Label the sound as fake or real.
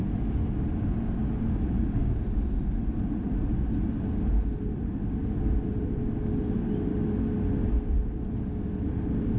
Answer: real